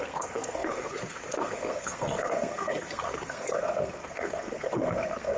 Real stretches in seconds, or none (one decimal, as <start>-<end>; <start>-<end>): none